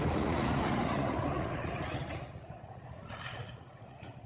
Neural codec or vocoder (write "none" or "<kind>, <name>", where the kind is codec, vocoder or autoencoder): vocoder, Vocos